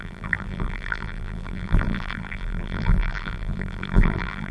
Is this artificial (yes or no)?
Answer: yes